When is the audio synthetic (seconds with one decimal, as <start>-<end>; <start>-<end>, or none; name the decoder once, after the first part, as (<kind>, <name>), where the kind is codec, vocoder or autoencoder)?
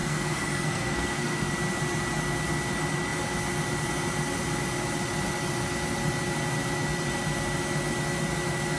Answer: 0.0-1.5 (codec, SNAC)